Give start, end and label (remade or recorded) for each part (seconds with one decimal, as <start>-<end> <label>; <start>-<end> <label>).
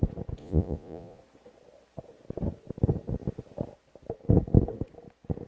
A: 0.0-0.4 recorded; 0.4-1.2 remade; 1.2-5.5 recorded